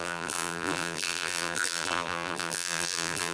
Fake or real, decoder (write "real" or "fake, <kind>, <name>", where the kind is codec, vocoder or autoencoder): fake, vocoder, BigVGAN v2